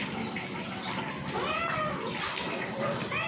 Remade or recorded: recorded